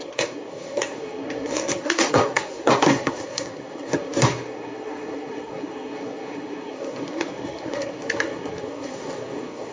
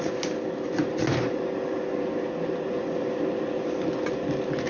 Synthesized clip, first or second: first